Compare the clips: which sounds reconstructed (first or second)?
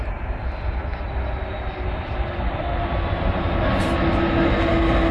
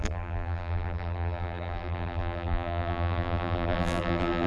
second